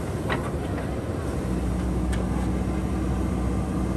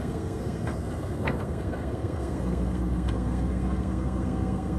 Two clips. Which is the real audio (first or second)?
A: first